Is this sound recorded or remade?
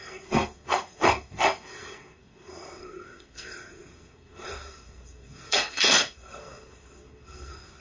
remade